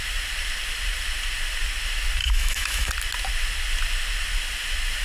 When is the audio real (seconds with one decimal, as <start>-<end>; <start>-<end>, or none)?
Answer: 0.0-2.2; 2.9-5.0